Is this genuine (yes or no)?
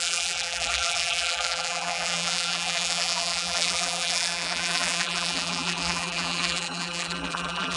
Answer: no